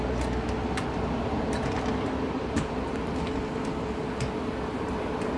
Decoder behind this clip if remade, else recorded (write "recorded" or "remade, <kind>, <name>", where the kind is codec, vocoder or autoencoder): recorded